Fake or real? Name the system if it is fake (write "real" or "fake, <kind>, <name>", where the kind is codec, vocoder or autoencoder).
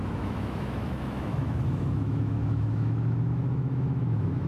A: fake, autoencoder, DAC-VAE